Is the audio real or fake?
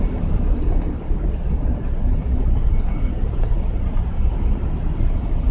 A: real